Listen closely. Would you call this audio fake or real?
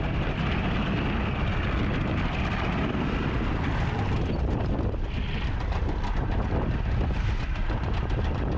real